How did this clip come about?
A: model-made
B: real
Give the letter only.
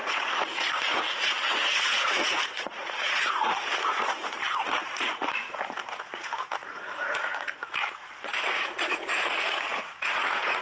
A